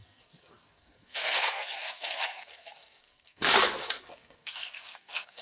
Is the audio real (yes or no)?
no